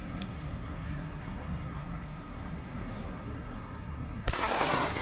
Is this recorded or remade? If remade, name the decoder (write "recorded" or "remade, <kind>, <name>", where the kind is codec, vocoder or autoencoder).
remade, codec, SNAC